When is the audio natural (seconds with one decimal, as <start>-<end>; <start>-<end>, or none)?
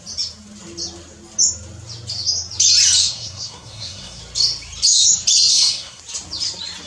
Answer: 0.0-3.0; 4.2-5.5; 6.0-6.9